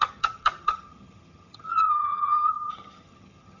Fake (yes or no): yes